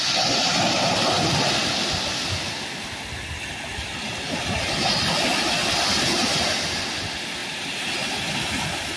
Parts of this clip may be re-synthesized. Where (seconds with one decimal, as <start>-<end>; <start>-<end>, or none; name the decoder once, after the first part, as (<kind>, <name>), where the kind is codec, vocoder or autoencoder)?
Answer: none